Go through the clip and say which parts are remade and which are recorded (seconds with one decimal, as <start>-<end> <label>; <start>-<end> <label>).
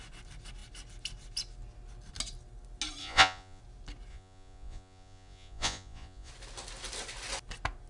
0.0-3.0 recorded; 3.0-3.6 remade; 3.6-4.1 recorded; 4.1-6.3 remade; 6.3-7.9 recorded